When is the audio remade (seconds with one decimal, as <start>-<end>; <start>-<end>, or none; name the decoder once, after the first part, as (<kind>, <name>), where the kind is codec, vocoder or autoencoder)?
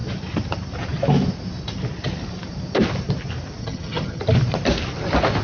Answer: 3.6-4.2 (vocoder, HiFi-GAN)